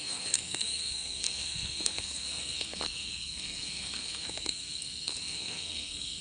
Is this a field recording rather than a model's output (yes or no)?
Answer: no